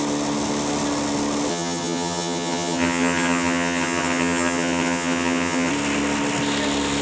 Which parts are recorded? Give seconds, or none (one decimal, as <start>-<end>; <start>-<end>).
0.0-1.5; 5.7-7.0